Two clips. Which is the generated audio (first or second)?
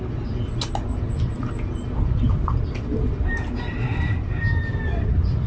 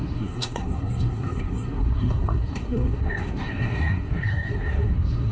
second